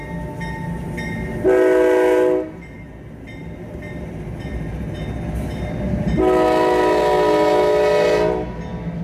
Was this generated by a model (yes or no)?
no